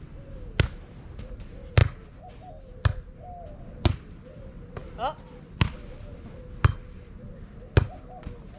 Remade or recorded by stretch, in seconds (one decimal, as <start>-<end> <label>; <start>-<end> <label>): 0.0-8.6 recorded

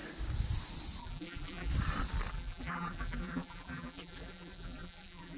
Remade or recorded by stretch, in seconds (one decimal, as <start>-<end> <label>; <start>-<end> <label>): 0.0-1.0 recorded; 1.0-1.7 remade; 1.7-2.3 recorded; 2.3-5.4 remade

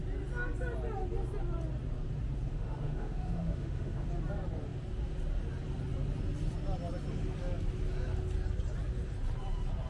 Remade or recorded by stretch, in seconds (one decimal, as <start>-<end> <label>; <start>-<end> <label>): 0.0-2.5 recorded; 2.5-4.1 remade; 4.1-9.9 recorded